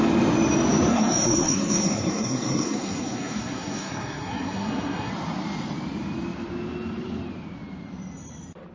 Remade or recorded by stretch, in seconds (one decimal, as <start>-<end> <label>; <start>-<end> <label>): 0.0-0.9 recorded; 0.9-5.1 remade; 5.1-8.7 recorded

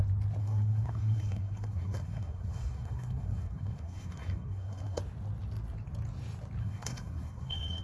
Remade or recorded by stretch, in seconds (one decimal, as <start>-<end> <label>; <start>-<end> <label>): 0.0-0.4 recorded; 0.4-5.0 remade; 5.0-6.6 recorded; 6.6-7.8 remade

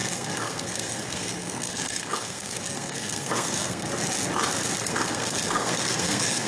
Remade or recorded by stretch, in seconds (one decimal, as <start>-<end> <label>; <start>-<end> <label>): 0.0-3.9 remade; 3.9-4.8 recorded; 4.8-6.5 remade

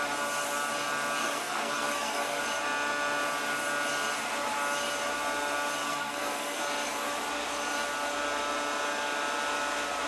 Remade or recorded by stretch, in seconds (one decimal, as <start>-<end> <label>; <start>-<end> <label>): 0.0-1.2 recorded; 1.2-2.4 remade; 2.4-5.8 recorded; 5.8-6.6 remade; 6.6-10.1 recorded

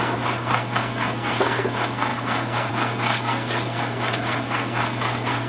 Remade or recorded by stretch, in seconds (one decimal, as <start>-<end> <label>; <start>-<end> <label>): 0.0-5.5 remade

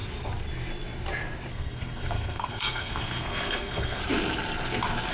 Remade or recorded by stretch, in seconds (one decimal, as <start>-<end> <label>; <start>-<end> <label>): 0.0-1.5 recorded; 1.5-4.0 remade; 4.0-5.1 recorded

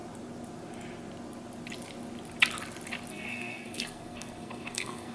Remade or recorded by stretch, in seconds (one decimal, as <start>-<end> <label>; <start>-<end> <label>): 0.0-3.1 recorded; 3.1-5.1 remade

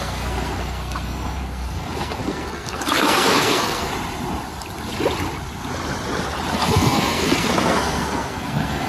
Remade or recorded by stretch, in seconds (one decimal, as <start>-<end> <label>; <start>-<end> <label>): 0.0-3.9 remade; 3.9-6.5 recorded; 6.5-8.9 remade